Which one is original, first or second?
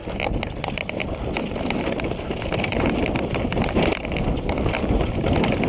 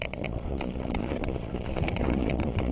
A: first